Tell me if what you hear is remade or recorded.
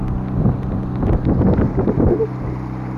recorded